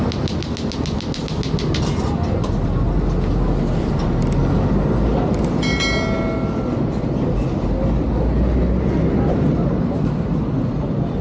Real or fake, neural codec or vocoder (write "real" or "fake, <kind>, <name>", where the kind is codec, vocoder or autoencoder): real